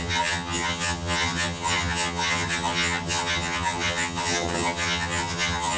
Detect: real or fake fake